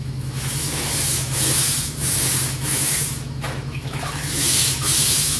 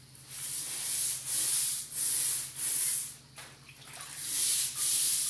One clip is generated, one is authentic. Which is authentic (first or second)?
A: second